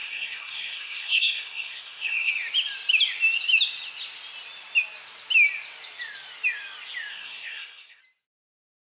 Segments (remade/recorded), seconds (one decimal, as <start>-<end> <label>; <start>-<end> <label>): 0.0-2.3 remade; 2.3-7.1 recorded; 7.1-8.0 remade; 8.0-8.9 recorded